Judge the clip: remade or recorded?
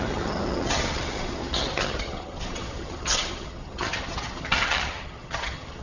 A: remade